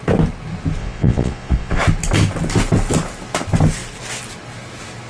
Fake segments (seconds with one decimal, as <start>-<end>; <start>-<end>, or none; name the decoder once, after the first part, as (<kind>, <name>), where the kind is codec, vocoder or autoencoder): 0.8-1.8 (vocoder, Vocos)